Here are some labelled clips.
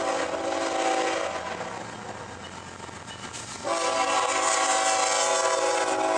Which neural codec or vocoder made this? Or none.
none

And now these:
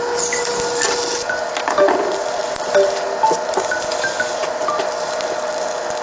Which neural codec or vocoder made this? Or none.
none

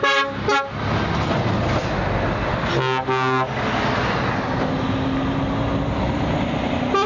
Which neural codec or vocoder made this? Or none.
none